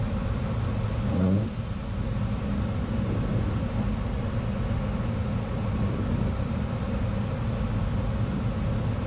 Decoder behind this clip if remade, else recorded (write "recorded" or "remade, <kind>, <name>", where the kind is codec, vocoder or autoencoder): recorded